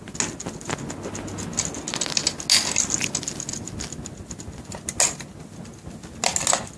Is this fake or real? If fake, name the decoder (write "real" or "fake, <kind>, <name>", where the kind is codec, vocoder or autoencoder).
real